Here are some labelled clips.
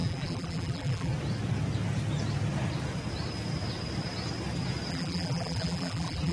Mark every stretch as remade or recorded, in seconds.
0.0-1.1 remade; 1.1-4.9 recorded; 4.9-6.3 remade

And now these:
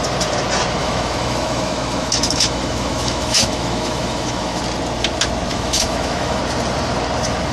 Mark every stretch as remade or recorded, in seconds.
0.0-0.8 recorded; 0.8-4.6 remade; 4.6-5.5 recorded; 5.5-6.4 remade; 6.4-7.5 recorded

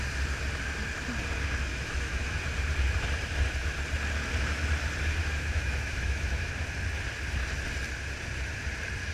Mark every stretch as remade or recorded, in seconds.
0.0-1.7 recorded; 1.7-2.4 remade; 2.4-5.2 recorded; 5.2-6.5 remade; 6.5-9.1 recorded

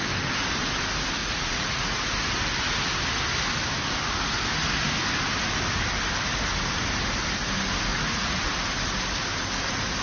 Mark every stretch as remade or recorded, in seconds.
0.0-1.2 recorded; 1.2-2.0 remade; 2.0-7.9 recorded; 7.9-8.5 remade; 8.5-10.0 recorded

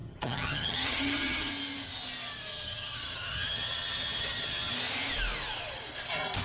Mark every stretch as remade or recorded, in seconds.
0.0-1.5 remade; 1.5-2.5 recorded; 2.5-4.7 remade; 4.7-6.4 recorded